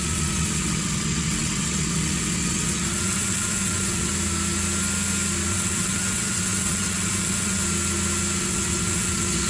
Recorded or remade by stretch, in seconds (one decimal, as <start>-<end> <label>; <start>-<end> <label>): 0.0-4.1 remade; 4.1-5.5 recorded; 5.5-7.6 remade; 7.6-8.4 recorded; 8.4-9.5 remade